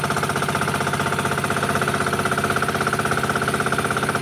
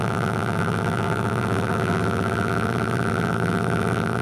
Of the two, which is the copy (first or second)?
second